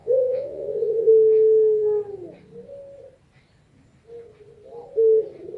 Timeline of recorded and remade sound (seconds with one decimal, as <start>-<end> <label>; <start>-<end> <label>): 0.0-1.1 remade; 1.1-5.6 recorded